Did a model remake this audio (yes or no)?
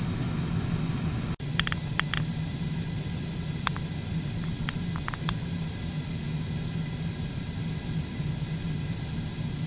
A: no